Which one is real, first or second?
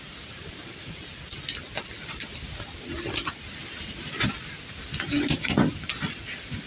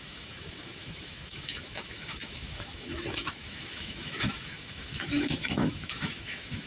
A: first